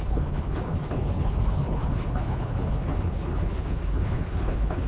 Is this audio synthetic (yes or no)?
yes